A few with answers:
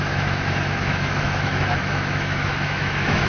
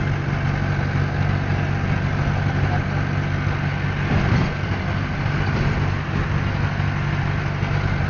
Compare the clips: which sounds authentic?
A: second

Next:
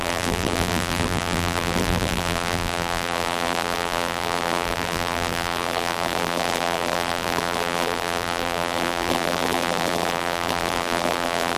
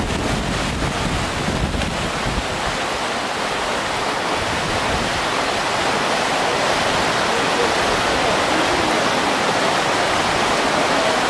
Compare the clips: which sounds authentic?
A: second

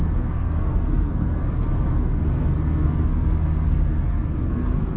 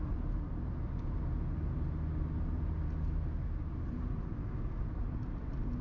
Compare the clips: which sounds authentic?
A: second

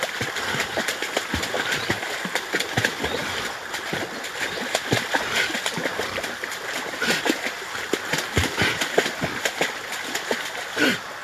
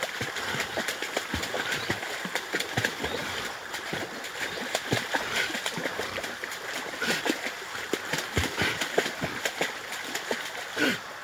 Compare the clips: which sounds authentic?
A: first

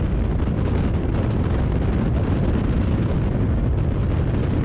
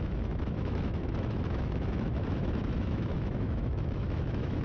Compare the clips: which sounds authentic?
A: first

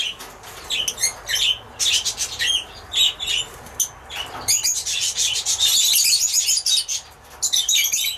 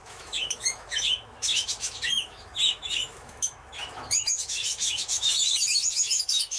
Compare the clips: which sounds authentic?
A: first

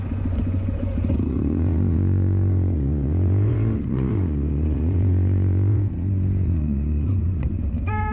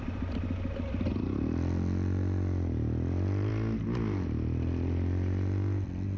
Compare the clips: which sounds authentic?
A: second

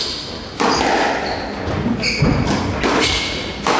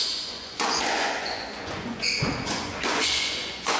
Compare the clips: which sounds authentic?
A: first